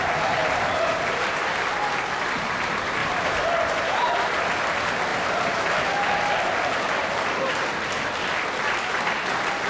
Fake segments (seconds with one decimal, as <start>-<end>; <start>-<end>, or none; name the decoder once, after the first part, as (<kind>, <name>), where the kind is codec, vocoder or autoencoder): 0.4-1.6 (vocoder, BigVGAN v2); 3.0-4.3; 5.1-6.3